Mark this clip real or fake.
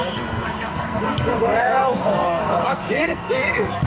fake